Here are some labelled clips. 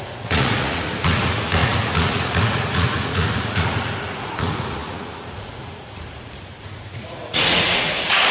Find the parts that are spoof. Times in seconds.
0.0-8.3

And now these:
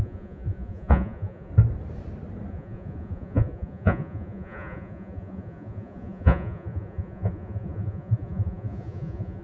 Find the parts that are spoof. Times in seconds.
0.0-1.5; 2.5-9.4

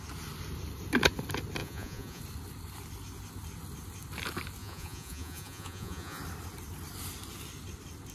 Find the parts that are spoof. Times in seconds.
1.6-2.2; 4.6-6.2

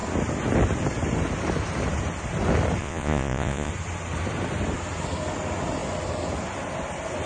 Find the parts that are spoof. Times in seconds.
2.8-3.7

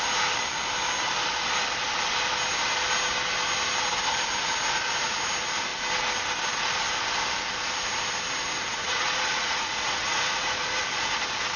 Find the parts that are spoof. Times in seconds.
8.7-10.8

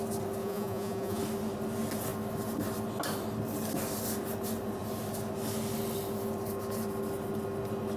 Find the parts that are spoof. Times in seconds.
0.4-1.2

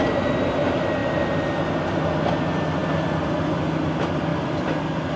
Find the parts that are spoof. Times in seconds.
none

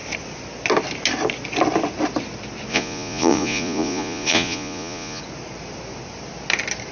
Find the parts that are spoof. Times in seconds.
2.7-5.2